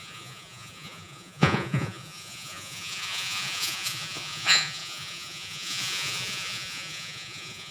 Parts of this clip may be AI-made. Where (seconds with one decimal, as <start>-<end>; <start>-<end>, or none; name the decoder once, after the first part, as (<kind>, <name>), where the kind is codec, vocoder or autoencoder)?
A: 0.0-7.7 (vocoder, Vocos)